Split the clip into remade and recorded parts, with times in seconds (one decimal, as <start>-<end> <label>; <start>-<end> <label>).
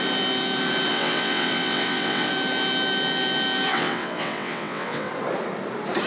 0.0-0.9 recorded; 0.9-2.3 remade; 2.3-3.7 recorded; 3.7-5.1 remade; 5.1-6.1 recorded